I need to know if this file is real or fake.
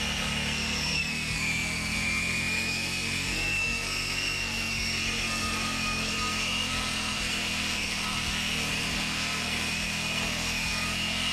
fake